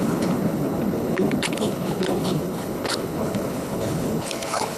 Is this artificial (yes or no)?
yes